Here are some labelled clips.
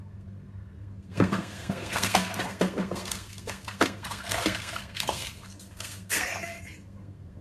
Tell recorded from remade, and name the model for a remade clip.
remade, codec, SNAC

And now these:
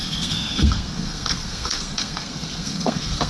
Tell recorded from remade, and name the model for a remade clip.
remade, codec, SNAC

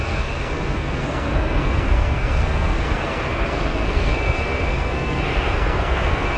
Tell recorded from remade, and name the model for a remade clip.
remade, codec, SNAC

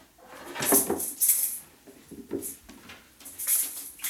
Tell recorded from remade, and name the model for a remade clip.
recorded